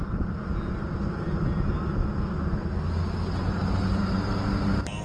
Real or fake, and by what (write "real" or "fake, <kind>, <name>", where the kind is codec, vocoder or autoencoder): real